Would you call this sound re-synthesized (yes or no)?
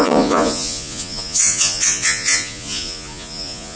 yes